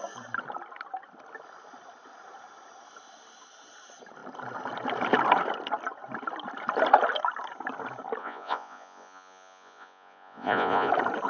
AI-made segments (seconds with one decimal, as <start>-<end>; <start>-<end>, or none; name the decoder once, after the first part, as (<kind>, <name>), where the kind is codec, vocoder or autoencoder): 8.2-10.9 (vocoder, Vocos)